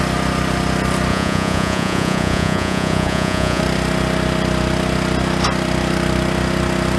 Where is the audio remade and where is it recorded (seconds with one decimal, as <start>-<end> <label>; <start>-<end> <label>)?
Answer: 0.0-1.1 recorded; 1.1-3.6 remade; 3.6-7.0 recorded